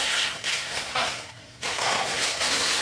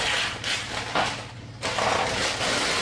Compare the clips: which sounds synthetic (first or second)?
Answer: first